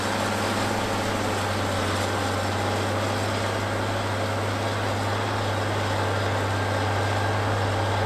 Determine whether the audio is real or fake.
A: real